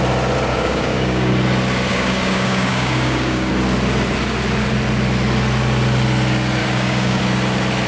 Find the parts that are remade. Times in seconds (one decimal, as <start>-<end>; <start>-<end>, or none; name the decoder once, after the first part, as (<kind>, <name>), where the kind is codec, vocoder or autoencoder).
0.5-1.3 (codec, DAC); 1.9-3.5; 6.6-7.2